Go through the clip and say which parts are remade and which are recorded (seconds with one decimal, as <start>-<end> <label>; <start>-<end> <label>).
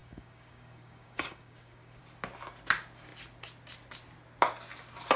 0.0-2.0 remade; 2.0-5.2 recorded